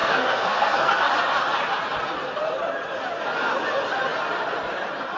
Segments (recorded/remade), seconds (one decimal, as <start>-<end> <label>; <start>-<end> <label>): 0.0-1.1 remade; 1.1-5.2 recorded